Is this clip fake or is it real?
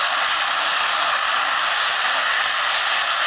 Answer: real